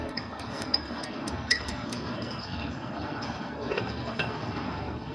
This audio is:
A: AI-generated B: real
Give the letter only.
A